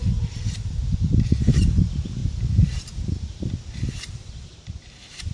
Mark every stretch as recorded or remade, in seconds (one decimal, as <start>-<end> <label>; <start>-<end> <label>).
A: 0.0-2.2 recorded; 2.2-3.4 remade; 3.4-4.5 recorded; 4.5-5.3 remade